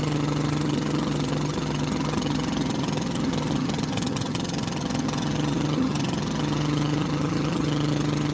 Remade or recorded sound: remade